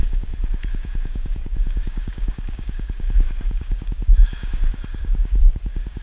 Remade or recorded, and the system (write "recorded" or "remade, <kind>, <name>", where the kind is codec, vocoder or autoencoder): remade, codec, DAC